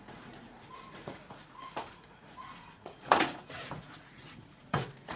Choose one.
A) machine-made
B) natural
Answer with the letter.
A